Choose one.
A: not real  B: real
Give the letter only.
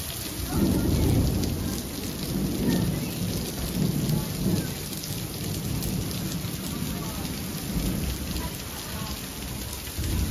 B